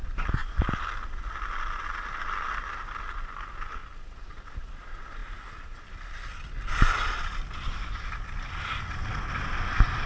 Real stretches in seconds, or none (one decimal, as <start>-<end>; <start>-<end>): 0.0-10.1